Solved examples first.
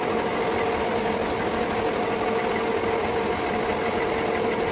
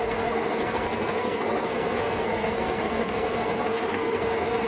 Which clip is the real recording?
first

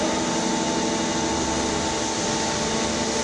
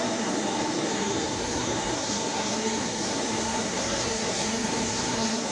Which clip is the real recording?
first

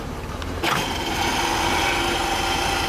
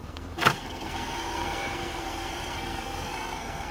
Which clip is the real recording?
first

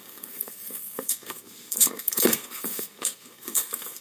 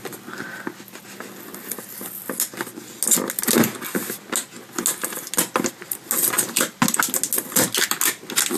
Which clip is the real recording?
second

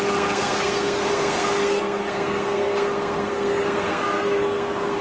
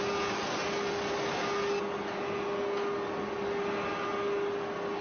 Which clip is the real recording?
second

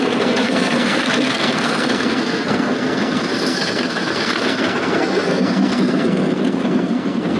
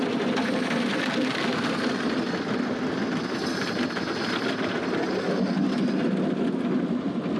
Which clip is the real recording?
second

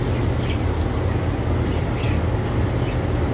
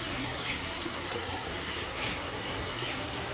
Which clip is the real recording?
first